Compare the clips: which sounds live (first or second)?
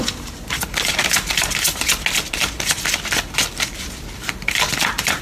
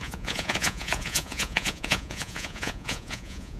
first